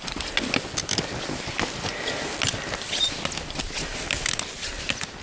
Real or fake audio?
real